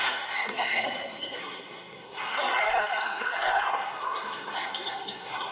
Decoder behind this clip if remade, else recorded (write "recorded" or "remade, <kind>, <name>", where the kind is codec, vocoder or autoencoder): remade, codec, SNAC